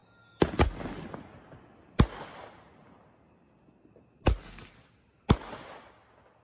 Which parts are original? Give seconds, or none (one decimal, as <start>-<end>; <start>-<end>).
0.0-6.4